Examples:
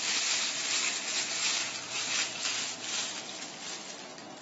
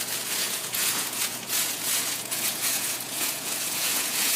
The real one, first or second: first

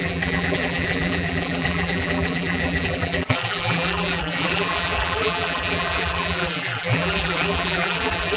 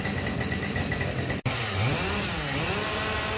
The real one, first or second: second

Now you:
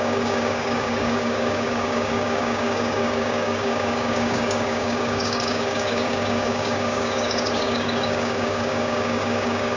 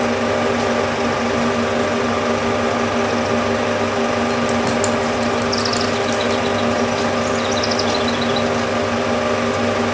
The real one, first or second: second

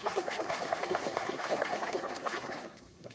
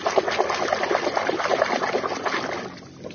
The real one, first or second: second